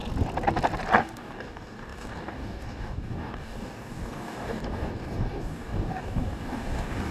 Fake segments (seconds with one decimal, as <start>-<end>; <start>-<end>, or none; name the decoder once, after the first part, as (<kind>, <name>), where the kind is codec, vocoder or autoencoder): 1.0-7.1 (codec, DAC)